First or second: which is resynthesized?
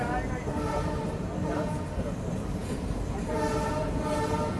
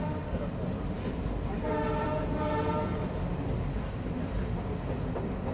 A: first